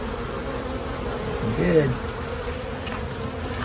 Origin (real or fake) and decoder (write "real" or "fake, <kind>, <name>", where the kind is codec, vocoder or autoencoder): real